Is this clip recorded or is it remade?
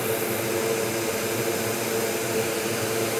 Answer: recorded